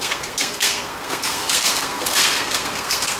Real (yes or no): no